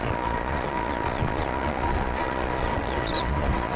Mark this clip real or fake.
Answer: fake